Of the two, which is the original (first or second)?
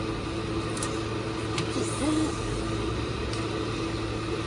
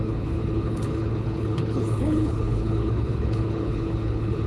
first